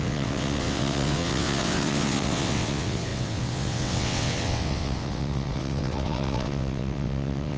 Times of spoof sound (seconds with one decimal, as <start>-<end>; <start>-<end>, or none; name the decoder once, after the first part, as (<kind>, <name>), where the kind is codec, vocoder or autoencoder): 0.0-7.6 (vocoder, WaveNeXt)